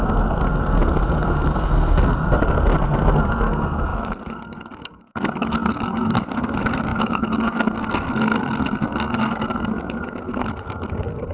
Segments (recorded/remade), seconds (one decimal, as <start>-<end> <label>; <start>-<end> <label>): 0.0-11.3 remade